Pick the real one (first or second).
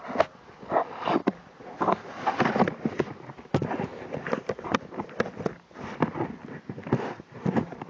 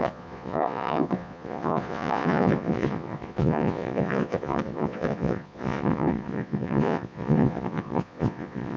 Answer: first